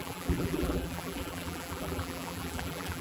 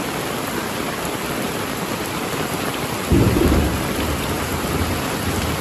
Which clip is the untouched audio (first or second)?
second